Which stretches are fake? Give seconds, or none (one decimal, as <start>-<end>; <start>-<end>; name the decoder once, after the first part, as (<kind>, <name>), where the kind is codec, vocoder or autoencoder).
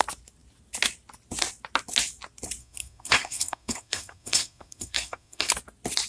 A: 2.6-5.5 (codec, SNAC)